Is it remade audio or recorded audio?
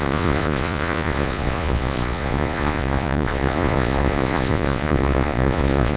remade